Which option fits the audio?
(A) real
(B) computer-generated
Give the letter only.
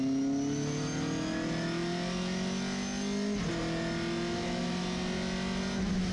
A